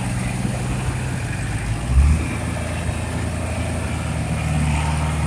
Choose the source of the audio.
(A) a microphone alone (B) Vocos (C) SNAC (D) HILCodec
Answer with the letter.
A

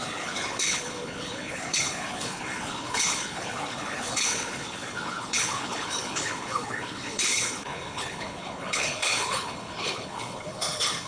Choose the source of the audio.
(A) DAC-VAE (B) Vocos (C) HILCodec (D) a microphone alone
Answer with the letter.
C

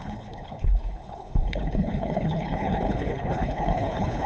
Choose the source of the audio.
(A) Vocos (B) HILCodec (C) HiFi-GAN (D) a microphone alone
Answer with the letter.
B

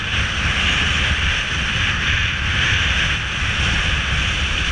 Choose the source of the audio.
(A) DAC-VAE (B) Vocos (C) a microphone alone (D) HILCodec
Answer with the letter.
C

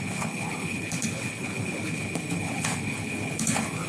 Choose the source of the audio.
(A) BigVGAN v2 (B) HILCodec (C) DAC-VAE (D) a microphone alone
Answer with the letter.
B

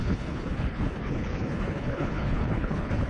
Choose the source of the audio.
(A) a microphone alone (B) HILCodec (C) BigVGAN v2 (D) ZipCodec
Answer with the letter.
B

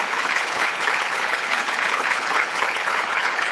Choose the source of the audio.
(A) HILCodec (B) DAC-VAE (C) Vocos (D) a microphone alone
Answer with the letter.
A